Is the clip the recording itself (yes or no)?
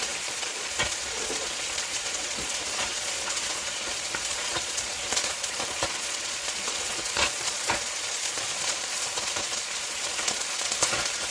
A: no